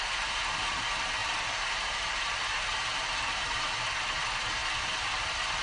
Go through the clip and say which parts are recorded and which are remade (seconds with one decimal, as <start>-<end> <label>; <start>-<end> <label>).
0.0-4.6 remade; 4.6-5.6 recorded

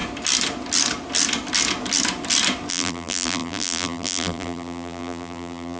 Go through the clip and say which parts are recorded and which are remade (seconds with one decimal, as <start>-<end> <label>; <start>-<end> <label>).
0.0-2.7 recorded; 2.7-5.8 remade